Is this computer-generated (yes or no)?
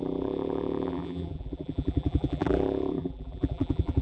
yes